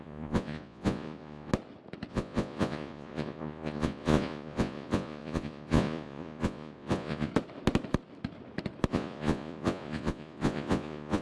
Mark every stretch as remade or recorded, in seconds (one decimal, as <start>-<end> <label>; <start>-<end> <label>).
0.0-1.5 remade; 1.5-2.1 recorded; 2.1-7.3 remade; 7.3-8.9 recorded; 8.9-11.2 remade